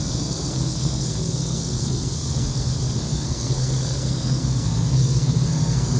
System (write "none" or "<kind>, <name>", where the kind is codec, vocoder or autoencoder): codec, SNAC